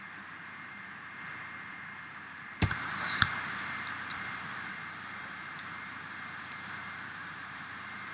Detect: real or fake fake